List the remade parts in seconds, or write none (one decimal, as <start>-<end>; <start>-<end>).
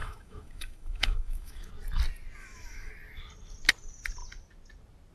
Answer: 0.0-1.7; 2.4-2.9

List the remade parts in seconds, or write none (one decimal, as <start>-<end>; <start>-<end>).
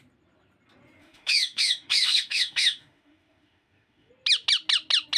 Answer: 1.0-4.1